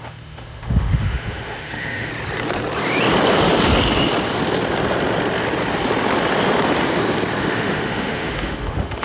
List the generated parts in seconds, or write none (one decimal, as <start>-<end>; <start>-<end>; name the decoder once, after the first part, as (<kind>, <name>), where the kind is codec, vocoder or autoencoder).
0.0-2.1 (autoencoder, DAC-VAE); 7.4-9.0